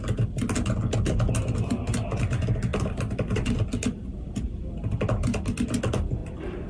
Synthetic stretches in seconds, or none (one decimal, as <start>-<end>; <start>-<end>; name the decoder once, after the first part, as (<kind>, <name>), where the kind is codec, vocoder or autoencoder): 2.7-4.1 (vocoder, BigVGAN v2); 6.2-6.7